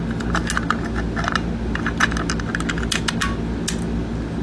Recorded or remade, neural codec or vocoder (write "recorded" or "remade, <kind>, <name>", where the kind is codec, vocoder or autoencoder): recorded